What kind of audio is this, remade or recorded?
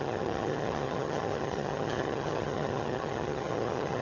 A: remade